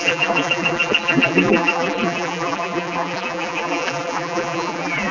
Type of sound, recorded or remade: remade